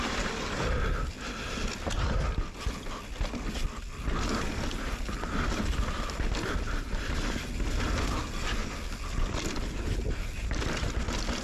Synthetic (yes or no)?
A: no